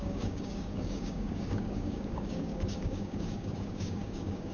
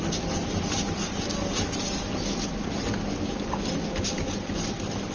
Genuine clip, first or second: second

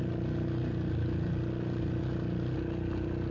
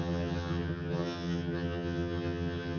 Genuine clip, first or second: first